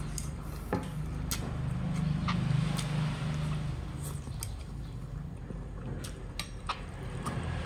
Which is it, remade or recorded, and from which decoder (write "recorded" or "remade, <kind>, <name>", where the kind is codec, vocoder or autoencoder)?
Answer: recorded